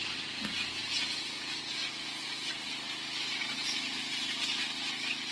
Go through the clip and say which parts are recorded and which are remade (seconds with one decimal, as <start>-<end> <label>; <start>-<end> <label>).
0.0-0.8 recorded; 0.8-2.5 remade; 2.5-5.3 recorded